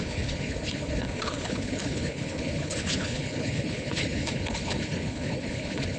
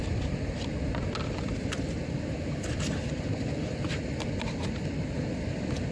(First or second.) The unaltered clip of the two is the second